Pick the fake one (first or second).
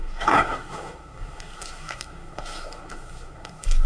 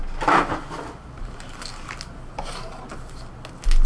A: first